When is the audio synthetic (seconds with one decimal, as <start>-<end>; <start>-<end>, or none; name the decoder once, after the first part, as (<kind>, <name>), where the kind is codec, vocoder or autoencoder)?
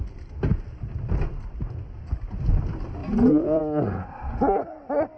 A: 0.5-2.5 (vocoder, BigVGAN v2); 3.0-3.6